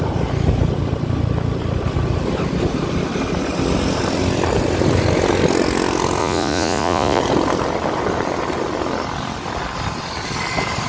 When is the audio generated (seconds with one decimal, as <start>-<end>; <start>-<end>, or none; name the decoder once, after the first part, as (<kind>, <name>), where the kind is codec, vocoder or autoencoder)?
6.2-7.2 (vocoder, Vocos)